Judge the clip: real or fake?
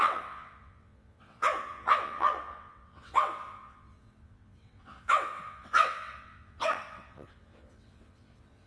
fake